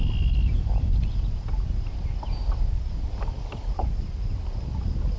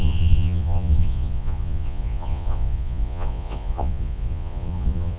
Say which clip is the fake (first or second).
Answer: second